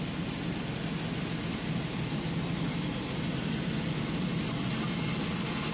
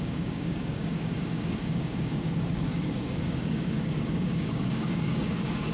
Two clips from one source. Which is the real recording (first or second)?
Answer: first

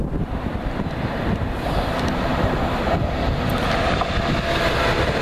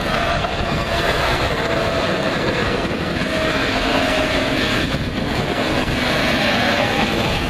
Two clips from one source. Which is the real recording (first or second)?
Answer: first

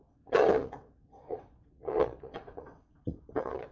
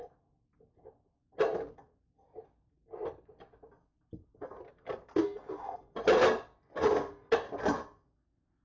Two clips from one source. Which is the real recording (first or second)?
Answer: second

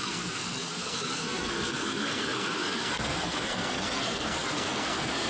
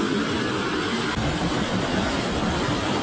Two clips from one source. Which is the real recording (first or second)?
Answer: second